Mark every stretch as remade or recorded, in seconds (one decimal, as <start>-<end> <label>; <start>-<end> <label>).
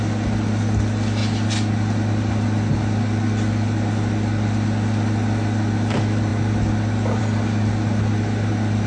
0.0-8.9 recorded